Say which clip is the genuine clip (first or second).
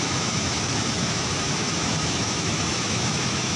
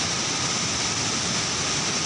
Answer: second